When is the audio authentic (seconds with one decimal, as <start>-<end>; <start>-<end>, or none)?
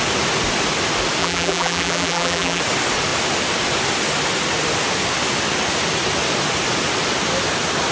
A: 0.0-1.2; 2.6-7.9